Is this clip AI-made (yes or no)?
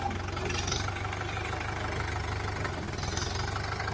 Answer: no